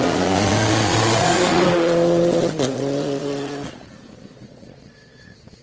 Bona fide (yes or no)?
no